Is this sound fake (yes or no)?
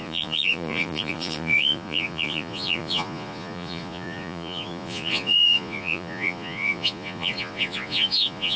yes